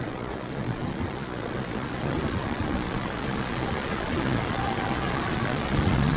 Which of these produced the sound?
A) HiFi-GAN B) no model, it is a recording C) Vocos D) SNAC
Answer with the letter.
C